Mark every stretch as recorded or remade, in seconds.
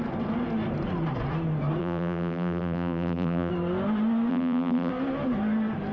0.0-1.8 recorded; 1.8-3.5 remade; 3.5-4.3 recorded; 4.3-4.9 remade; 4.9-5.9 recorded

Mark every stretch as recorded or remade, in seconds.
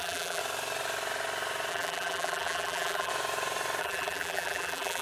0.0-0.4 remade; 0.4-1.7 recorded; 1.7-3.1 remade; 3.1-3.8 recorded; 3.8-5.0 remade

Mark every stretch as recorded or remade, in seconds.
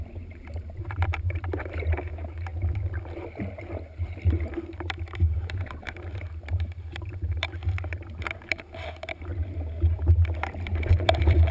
0.0-2.5 remade; 2.5-3.4 recorded; 3.4-7.6 remade; 7.6-8.2 recorded; 8.2-9.3 remade; 9.3-10.9 recorded; 10.9-11.5 remade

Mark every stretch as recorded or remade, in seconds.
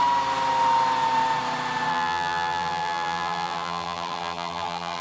0.0-1.9 recorded; 1.9-5.0 remade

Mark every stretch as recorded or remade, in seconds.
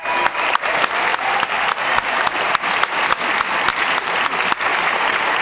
0.0-1.1 recorded; 1.1-1.8 remade; 1.8-3.7 recorded; 3.7-4.3 remade; 4.3-4.7 recorded; 4.7-5.4 remade